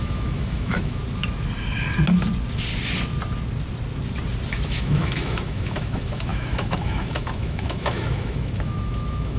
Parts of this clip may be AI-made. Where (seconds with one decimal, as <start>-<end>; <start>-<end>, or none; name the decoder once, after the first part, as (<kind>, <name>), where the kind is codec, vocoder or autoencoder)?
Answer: 0.0-1.0 (autoencoder, DAC-VAE); 4.5-9.4